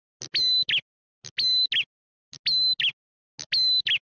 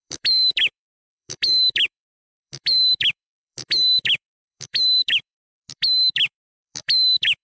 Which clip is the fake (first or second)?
second